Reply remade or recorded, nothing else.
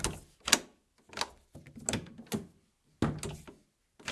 recorded